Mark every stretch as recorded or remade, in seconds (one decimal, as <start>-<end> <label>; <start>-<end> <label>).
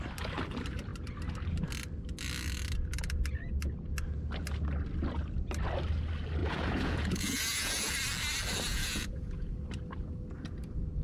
0.0-6.4 recorded; 6.4-7.9 remade; 7.9-8.7 recorded; 8.7-9.5 remade; 9.5-11.0 recorded